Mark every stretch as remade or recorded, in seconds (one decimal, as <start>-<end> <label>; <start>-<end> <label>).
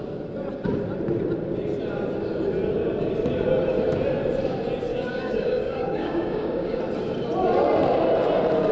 0.0-4.9 recorded; 4.9-6.8 remade; 6.8-8.7 recorded